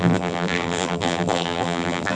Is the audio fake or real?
fake